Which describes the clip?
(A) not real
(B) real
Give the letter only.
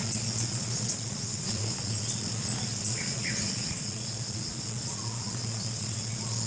A